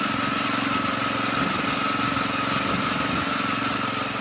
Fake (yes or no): no